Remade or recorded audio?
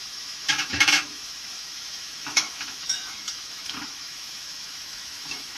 remade